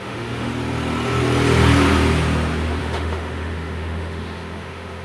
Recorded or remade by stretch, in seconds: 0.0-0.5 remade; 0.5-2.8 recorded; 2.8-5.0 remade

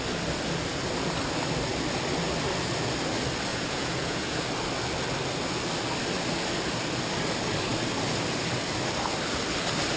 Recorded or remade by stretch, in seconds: 0.0-3.5 recorded; 3.5-4.4 remade; 4.4-10.0 recorded

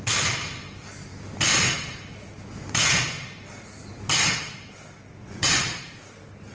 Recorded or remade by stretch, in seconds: 0.0-5.2 recorded; 5.2-6.0 remade; 6.0-6.5 recorded

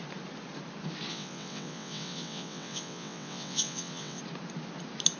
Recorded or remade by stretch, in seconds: 0.0-1.1 recorded; 1.1-4.2 remade; 4.2-5.2 recorded

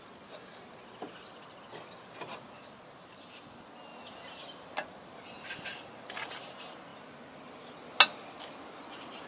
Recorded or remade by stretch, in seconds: 0.0-9.3 recorded

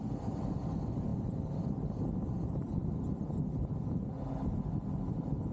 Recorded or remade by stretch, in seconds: 0.0-5.5 recorded

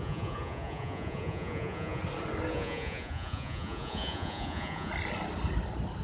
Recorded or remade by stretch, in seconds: 0.0-2.0 remade; 2.0-2.5 recorded; 2.5-4.9 remade; 4.9-6.0 recorded

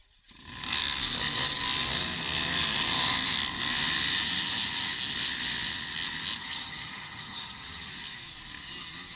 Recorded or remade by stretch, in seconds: 0.0-6.4 recorded; 6.4-7.9 remade; 7.9-9.2 recorded